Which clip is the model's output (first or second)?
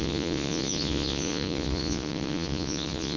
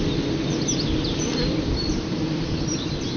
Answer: first